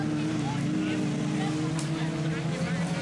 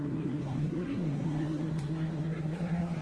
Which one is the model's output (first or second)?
second